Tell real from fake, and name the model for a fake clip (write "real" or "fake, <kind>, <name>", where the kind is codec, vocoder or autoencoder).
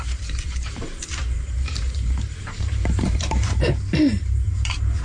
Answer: fake, vocoder, BigVGAN v2